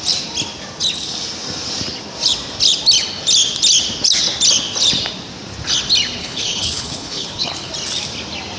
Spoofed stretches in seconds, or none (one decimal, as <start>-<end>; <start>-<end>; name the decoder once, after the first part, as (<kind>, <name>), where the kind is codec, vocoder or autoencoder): 6.2-7.7 (codec, HILCodec)